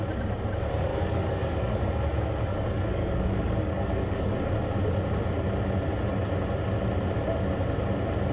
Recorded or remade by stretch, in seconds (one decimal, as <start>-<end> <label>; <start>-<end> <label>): 0.0-0.9 recorded; 0.9-1.8 remade; 1.8-2.5 recorded; 2.5-4.3 remade; 4.3-8.3 recorded